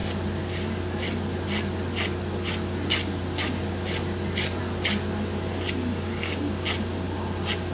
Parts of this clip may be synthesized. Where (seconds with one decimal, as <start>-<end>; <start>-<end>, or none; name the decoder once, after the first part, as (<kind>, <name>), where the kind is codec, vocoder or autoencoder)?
5.9-6.5 (codec, DAC)